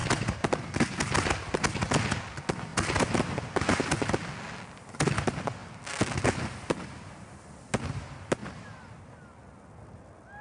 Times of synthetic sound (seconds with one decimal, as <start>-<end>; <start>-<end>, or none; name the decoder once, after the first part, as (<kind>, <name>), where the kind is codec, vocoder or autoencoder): none